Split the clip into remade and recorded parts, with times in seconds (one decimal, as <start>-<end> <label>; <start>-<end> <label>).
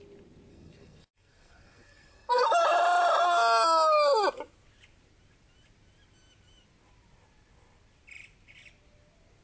0.0-0.5 recorded; 0.5-2.4 remade; 2.4-9.4 recorded